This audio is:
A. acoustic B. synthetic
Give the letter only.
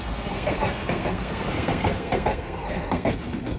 B